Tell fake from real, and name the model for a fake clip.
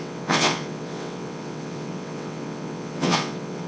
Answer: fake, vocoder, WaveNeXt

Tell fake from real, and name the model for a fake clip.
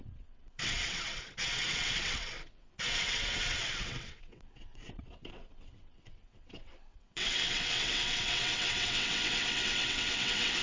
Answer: fake, vocoder, WaveNeXt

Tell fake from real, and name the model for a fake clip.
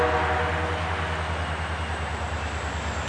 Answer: real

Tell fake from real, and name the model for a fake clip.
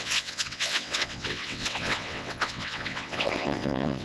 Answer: fake, vocoder, WaveNeXt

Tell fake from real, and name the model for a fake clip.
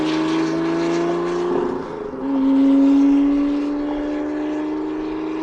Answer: real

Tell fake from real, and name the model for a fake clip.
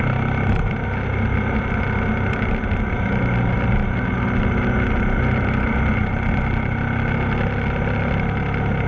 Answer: real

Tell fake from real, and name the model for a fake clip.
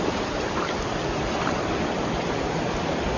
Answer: real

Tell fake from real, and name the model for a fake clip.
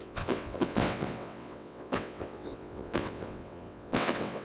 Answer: fake, vocoder, WaveNeXt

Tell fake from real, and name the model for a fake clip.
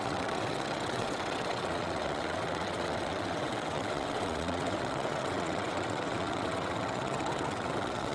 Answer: fake, vocoder, WaveNeXt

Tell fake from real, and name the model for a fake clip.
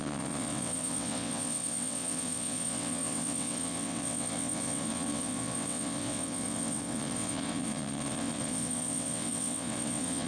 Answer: fake, vocoder, WaveNeXt